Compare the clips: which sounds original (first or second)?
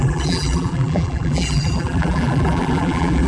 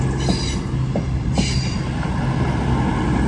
second